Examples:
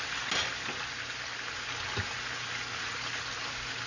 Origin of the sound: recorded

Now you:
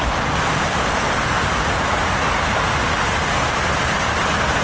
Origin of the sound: recorded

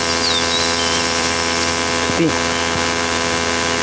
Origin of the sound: recorded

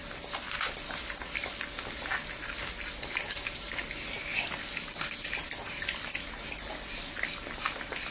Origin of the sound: recorded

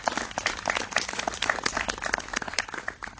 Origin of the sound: recorded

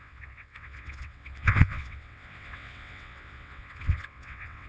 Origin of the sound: remade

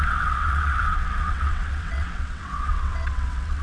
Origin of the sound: remade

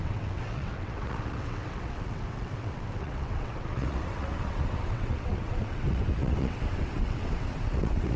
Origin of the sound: remade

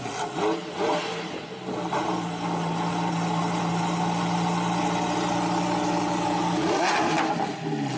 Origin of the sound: recorded